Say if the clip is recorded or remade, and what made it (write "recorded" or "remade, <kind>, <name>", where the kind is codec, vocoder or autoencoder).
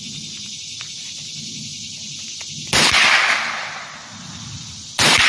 recorded